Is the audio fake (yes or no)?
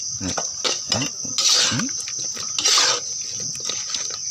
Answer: no